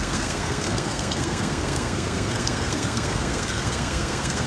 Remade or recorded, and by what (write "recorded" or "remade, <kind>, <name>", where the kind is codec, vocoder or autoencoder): remade, codec, SNAC